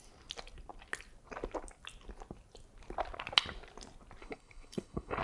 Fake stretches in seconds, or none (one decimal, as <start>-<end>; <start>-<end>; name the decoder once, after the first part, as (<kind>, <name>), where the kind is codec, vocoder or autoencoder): 4.2-5.2 (codec, HILCodec)